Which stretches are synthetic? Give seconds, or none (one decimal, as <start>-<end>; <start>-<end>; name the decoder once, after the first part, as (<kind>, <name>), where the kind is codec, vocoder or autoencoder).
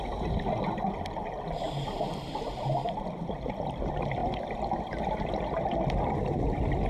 none